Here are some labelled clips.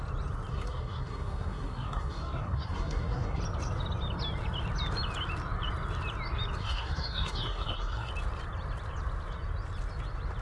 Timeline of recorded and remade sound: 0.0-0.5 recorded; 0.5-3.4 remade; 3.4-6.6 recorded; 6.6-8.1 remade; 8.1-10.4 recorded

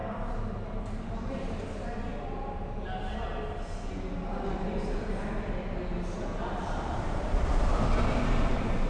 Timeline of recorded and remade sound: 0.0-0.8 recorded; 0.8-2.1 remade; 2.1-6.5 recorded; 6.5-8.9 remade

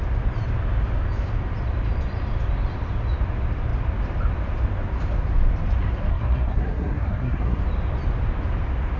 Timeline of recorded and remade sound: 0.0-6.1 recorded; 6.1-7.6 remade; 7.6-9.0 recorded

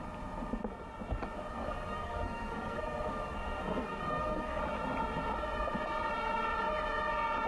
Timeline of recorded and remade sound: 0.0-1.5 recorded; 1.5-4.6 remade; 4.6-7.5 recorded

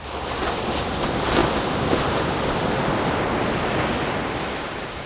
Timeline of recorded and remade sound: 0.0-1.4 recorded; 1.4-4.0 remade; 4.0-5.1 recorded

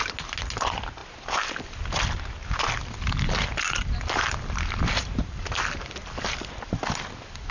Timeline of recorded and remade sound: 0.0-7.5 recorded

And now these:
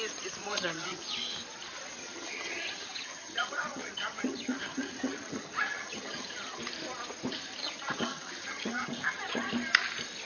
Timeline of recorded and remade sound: 0.0-0.4 recorded; 0.4-1.0 remade; 1.0-2.0 recorded; 2.0-6.6 remade; 6.6-7.6 recorded; 7.6-9.5 remade; 9.5-10.3 recorded

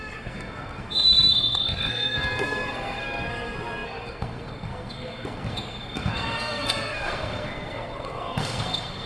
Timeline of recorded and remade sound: 0.0-9.1 remade